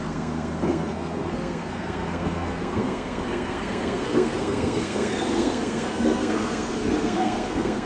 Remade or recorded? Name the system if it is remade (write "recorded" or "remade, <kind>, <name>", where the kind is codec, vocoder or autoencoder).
remade, codec, SNAC